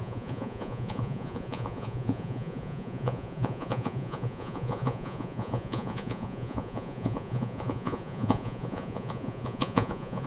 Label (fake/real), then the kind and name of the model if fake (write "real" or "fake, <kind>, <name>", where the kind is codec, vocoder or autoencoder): fake, vocoder, Vocos